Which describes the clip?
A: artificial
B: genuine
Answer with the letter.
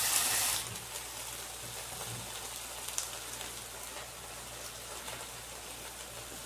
B